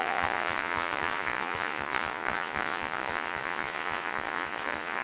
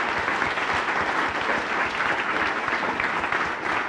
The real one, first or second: second